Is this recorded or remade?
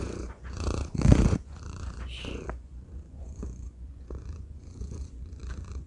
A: remade